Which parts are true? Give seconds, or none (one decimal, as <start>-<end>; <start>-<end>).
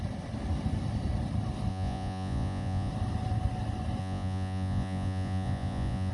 0.0-1.7; 2.9-4.0